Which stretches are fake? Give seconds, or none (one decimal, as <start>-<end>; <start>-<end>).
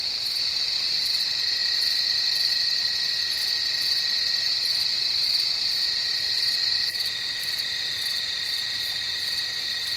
none